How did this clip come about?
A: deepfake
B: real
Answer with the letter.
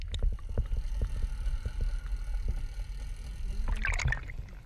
B